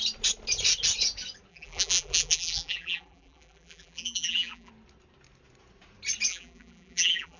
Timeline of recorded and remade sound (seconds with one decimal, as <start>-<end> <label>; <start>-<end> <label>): 0.0-1.5 recorded; 1.5-4.7 remade; 4.7-6.3 recorded; 6.3-7.4 remade